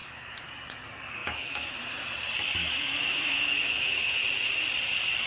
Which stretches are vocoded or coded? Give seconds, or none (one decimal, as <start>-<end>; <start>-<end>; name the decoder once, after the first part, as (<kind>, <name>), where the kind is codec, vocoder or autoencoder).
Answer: 0.0-0.5 (autoencoder, DAC-VAE); 1.2-1.8; 2.6-4.2